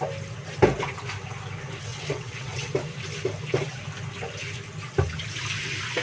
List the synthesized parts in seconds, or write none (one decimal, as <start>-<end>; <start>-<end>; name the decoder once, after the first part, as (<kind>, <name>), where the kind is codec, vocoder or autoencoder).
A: 1.9-2.7 (vocoder, WaveNeXt)

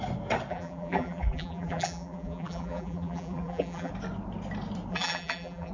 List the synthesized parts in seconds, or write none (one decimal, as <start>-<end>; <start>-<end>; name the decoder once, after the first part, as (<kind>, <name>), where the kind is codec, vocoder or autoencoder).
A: 0.5-3.9 (vocoder, BigVGAN v2); 4.9-5.7